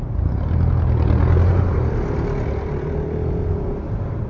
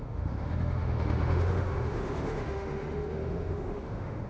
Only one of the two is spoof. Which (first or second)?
second